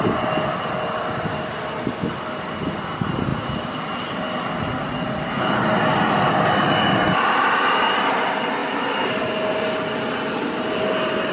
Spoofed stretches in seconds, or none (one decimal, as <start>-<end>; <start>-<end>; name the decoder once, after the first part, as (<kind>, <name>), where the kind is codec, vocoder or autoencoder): none